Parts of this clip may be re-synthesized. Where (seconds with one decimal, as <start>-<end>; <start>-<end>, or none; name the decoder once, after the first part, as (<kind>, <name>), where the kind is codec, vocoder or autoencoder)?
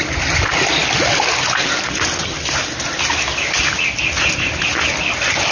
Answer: none